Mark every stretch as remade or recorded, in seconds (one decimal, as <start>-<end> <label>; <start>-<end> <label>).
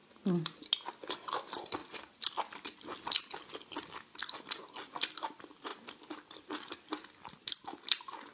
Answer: 0.0-8.3 recorded